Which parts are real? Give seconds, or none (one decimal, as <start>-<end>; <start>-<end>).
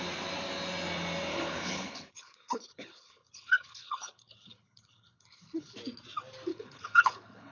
0.0-1.3; 5.8-6.5